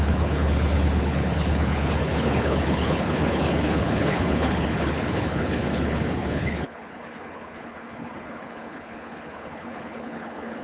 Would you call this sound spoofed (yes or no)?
yes